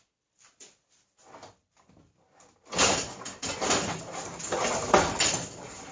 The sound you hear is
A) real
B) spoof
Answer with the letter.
A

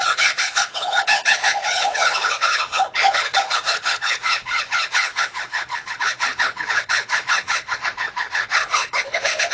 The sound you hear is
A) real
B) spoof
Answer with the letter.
B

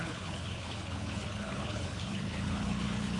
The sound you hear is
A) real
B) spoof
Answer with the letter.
B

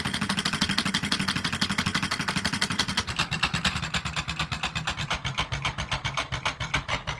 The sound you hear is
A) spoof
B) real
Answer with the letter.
B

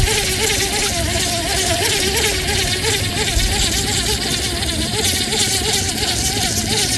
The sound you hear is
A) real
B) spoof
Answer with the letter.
A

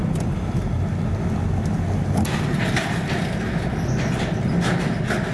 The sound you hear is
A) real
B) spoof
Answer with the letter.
A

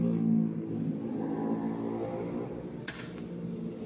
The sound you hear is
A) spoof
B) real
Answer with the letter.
B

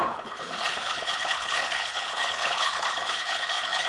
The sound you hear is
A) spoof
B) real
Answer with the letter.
A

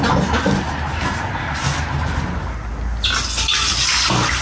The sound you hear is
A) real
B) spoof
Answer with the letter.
A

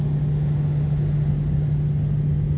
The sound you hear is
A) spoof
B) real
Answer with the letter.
B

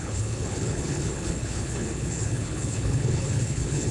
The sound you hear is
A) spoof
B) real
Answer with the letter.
A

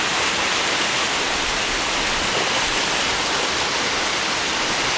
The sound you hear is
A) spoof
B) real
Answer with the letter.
B